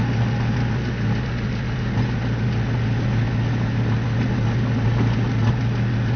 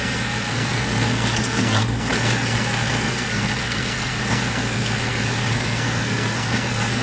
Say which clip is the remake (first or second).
second